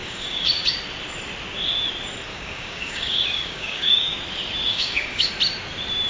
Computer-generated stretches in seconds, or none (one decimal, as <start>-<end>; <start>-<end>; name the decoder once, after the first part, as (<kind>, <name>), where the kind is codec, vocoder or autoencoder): 0.0-0.7 (codec, DAC); 2.3-4.2; 4.7-5.3